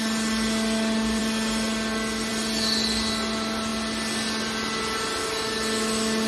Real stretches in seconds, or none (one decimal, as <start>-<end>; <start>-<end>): 0.0-6.3